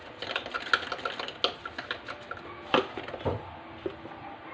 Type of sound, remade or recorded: recorded